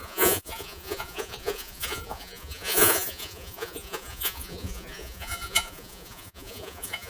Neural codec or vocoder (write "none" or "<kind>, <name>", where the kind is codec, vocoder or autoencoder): vocoder, Vocos